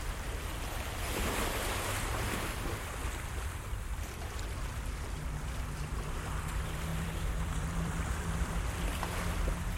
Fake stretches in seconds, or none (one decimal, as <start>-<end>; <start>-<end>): 6.9-8.7